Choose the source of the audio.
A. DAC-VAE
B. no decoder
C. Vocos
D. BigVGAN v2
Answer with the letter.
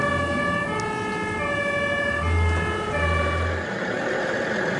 B